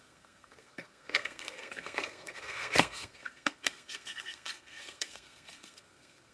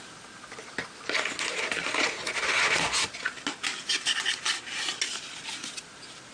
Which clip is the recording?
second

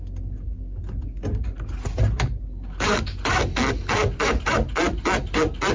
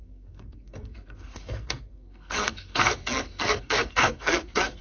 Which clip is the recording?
first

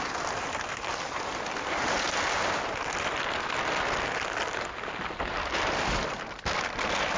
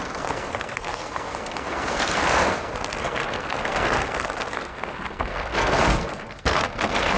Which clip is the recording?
first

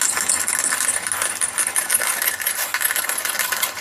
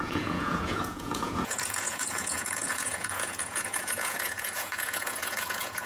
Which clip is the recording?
first